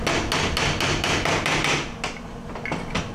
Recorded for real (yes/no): yes